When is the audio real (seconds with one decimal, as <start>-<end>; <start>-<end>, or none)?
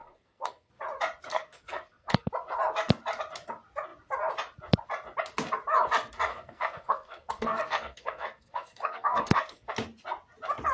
0.7-1.3; 2.3-6.3; 9.7-10.7